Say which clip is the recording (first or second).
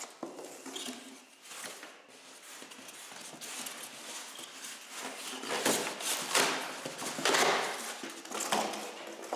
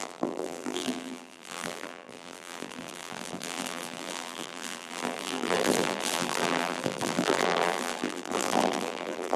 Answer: first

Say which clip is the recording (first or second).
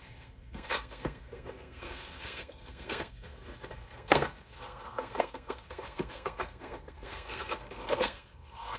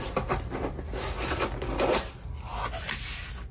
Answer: second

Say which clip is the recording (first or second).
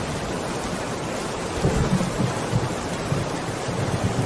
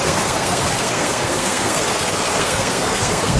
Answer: first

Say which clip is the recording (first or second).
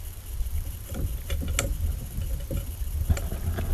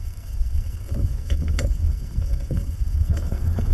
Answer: first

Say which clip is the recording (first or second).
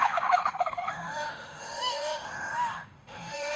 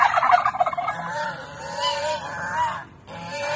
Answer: second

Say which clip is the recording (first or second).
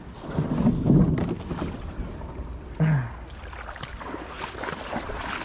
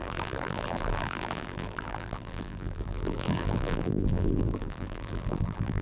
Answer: first